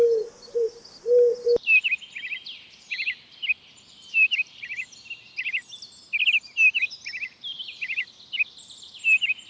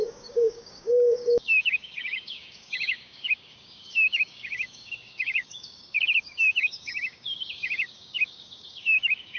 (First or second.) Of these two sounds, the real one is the first